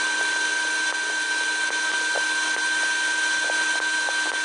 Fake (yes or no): no